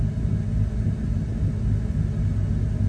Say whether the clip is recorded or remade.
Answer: recorded